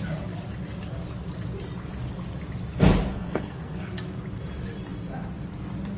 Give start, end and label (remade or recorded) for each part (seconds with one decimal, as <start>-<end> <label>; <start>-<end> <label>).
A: 0.0-3.1 recorded; 3.1-3.9 remade; 3.9-6.0 recorded

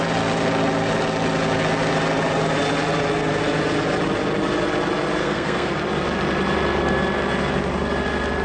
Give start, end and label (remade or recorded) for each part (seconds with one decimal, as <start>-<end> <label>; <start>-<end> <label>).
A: 0.0-5.2 recorded; 5.2-5.7 remade; 5.7-8.4 recorded

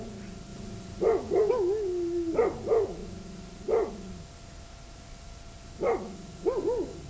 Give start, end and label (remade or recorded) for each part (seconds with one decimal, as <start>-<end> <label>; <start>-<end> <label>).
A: 0.0-7.1 recorded

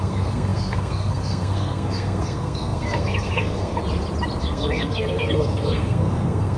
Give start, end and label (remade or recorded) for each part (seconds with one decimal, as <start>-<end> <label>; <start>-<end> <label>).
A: 0.0-3.8 remade; 3.8-4.4 recorded; 4.4-6.6 remade

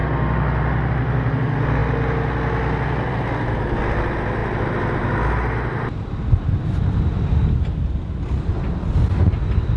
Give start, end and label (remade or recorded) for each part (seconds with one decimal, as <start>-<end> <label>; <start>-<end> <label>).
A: 0.0-9.8 recorded

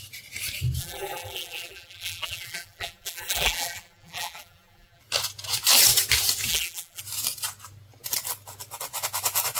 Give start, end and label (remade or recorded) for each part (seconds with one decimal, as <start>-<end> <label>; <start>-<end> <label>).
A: 0.0-0.8 recorded; 0.8-5.0 remade; 5.0-6.5 recorded; 6.5-7.0 remade; 7.0-9.6 recorded